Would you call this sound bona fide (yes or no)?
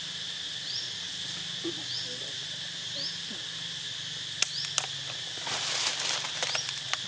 yes